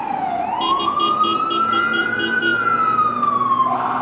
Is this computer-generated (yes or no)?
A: no